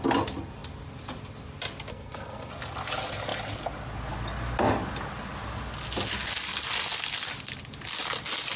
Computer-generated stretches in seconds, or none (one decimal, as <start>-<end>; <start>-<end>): 1.9-2.5